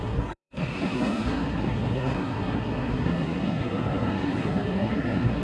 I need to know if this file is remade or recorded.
remade